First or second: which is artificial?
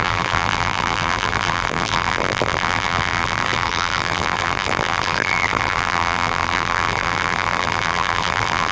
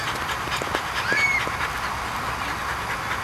first